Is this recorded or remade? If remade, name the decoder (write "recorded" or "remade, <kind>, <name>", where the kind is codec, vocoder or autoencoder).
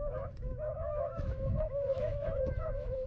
remade, autoencoder, DAC-VAE